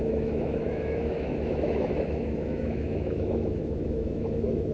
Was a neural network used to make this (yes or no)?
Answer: yes